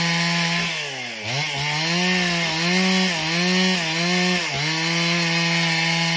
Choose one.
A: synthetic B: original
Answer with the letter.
B